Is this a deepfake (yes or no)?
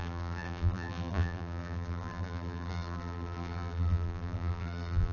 yes